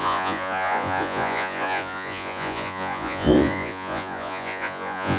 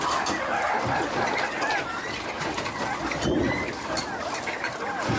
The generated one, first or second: first